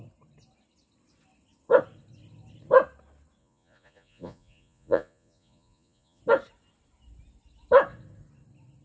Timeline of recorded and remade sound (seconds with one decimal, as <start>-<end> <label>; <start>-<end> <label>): 0.0-3.4 recorded; 3.4-6.2 remade; 6.2-8.8 recorded